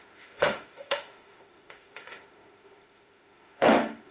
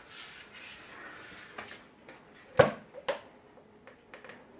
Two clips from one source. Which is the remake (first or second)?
first